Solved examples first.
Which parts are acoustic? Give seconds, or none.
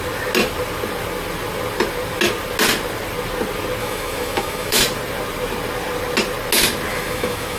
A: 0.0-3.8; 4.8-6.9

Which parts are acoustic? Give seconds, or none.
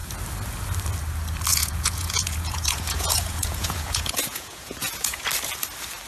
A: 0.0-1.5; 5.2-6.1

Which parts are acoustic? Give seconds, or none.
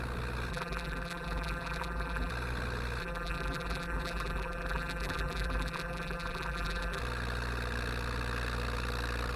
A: 0.0-0.5; 2.3-3.0; 7.0-9.4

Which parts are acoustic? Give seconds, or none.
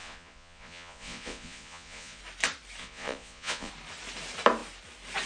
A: 2.2-2.8; 3.7-5.3